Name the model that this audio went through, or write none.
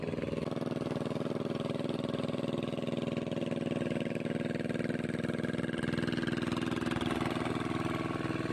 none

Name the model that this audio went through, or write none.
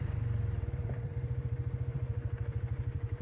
vocoder, BigVGAN v2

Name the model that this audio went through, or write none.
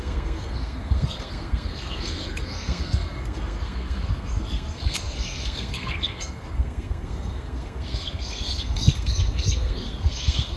codec, SNAC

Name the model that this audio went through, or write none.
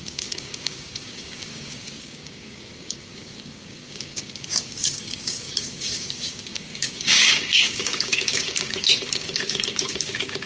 codec, DAC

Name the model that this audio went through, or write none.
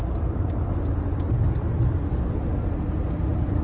none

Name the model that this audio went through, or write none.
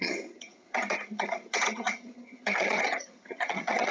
vocoder, HiFi-GAN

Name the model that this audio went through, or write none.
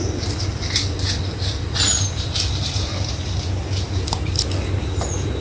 none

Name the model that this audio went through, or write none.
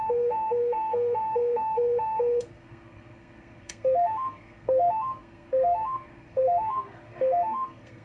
codec, SNAC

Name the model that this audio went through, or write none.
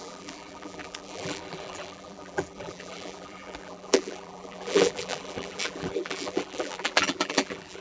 vocoder, BigVGAN v2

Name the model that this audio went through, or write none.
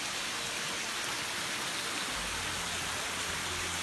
none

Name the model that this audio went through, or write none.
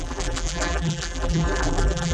vocoder, BigVGAN v2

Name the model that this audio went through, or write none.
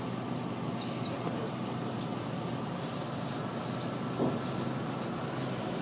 none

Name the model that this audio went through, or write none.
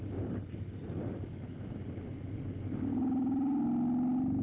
none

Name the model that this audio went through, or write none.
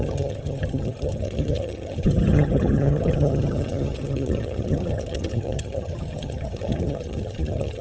vocoder, HiFi-GAN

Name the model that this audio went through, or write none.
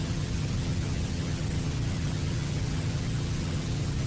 vocoder, HiFi-GAN